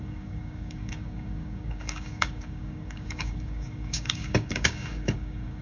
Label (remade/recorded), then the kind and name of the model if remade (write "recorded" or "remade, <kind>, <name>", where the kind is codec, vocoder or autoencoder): remade, codec, DAC